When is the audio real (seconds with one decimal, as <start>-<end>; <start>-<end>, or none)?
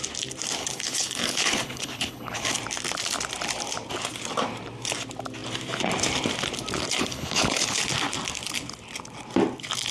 0.0-0.6; 2.6-7.0; 7.8-9.9